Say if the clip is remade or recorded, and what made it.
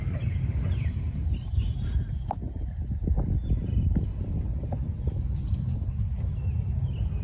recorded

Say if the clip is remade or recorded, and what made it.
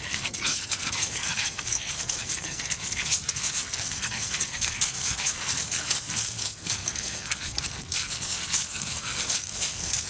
remade, codec, SNAC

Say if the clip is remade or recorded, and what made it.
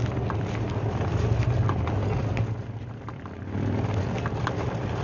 recorded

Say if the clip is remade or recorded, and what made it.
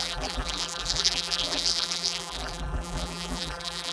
remade, vocoder, BigVGAN v2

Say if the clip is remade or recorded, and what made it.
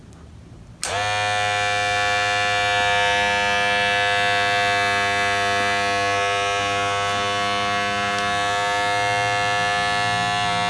recorded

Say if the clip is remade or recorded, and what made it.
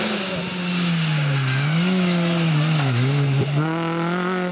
recorded